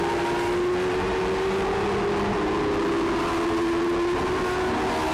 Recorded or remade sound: recorded